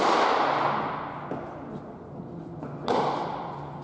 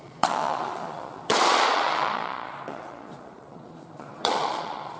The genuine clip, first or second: first